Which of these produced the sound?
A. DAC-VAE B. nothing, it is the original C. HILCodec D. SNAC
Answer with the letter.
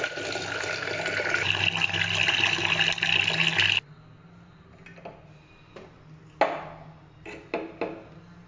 B